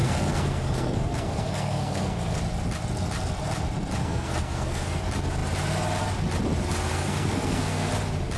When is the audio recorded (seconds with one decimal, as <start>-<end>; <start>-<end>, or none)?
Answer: 2.4-4.0; 5.0-6.9; 7.9-8.4